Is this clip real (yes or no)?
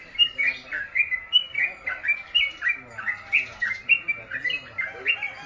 yes